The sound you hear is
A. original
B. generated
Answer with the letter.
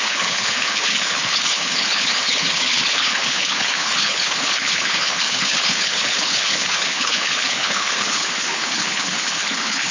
B